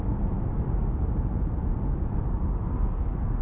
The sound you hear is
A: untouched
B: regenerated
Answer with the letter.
A